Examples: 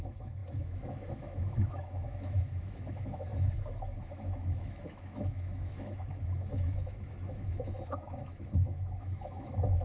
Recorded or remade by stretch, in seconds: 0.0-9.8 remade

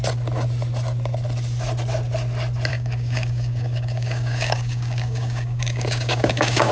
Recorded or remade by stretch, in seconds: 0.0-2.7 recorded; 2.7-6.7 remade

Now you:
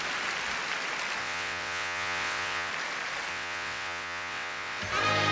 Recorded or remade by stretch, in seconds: 0.0-1.2 recorded; 1.2-2.7 remade; 2.7-3.3 recorded; 3.3-4.8 remade; 4.8-5.3 recorded